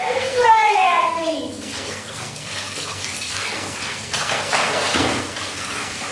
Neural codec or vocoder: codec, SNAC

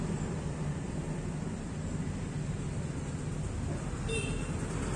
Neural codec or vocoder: none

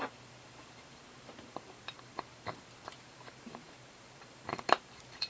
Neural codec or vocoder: vocoder, BigVGAN v2